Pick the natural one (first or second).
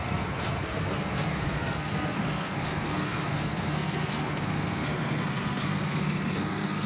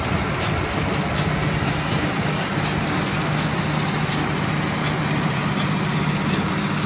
second